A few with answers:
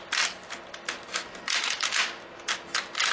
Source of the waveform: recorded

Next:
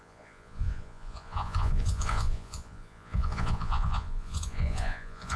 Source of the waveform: remade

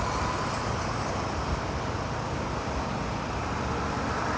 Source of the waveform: recorded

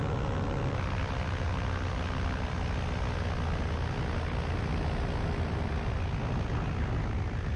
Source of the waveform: recorded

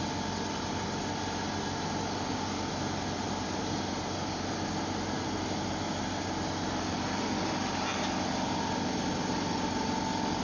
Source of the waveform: recorded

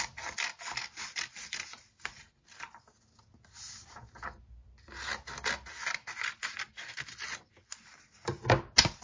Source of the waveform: recorded